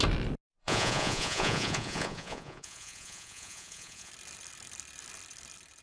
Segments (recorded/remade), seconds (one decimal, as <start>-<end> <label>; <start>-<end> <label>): 0.0-0.6 recorded; 0.6-4.1 remade; 4.1-5.8 recorded